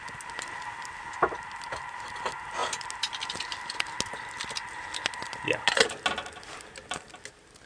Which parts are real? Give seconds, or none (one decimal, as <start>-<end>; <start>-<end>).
0.0-7.7